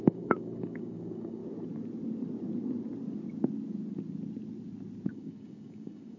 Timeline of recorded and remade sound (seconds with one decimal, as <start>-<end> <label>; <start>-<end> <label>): 0.0-1.4 remade; 1.4-5.1 recorded; 5.1-6.2 remade